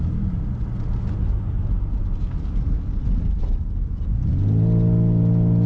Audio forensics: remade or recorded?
recorded